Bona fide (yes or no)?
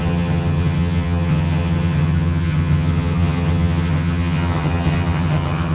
no